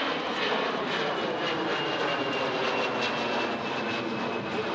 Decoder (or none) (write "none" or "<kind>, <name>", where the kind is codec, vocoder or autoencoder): none